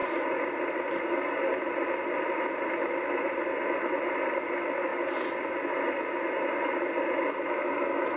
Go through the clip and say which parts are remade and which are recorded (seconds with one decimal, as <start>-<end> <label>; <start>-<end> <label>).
0.0-1.1 remade; 1.1-1.5 recorded; 1.5-2.7 remade; 2.7-8.2 recorded